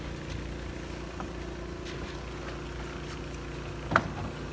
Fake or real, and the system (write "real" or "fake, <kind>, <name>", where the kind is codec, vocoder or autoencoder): real